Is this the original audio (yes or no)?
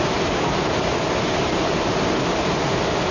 yes